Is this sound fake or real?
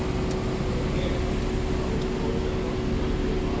real